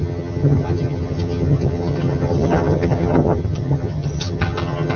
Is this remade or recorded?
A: remade